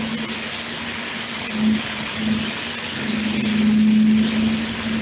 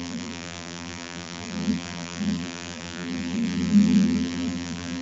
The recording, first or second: first